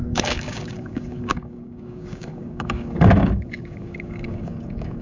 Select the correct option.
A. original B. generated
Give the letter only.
B